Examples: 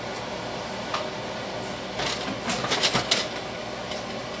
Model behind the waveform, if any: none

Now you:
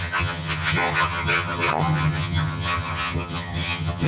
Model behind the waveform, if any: vocoder, HiFi-GAN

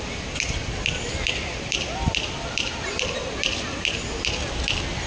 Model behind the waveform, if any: none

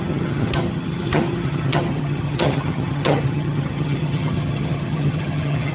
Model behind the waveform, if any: vocoder, HiFi-GAN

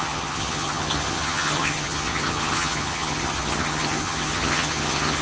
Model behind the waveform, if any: vocoder, HiFi-GAN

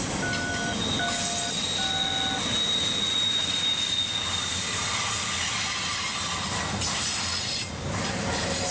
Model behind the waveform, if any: none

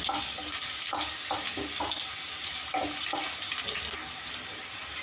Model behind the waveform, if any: none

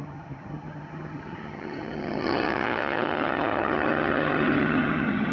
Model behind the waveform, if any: vocoder, HiFi-GAN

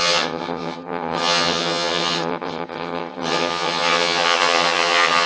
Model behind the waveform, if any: vocoder, HiFi-GAN